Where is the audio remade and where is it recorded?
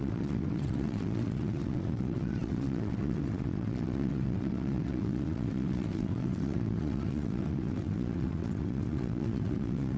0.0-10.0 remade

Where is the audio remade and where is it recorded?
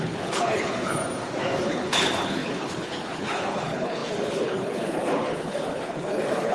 0.0-1.0 remade; 1.0-1.6 recorded; 1.6-6.5 remade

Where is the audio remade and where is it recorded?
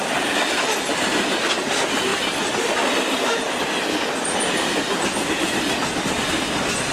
0.0-6.9 recorded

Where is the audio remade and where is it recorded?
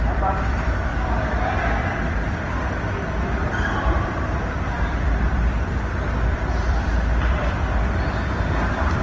0.0-9.0 remade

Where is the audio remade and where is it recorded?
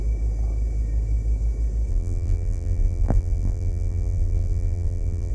0.0-1.9 recorded; 1.9-5.3 remade